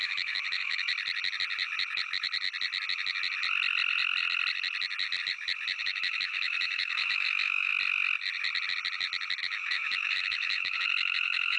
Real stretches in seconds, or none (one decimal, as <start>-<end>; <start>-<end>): 0.9-5.8; 7.7-9.4